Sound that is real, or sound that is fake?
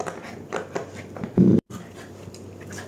fake